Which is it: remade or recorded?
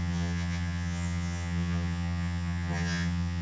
remade